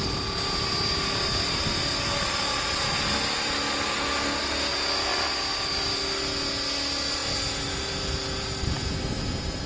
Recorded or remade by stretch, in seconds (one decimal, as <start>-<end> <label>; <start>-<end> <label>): 0.0-9.7 recorded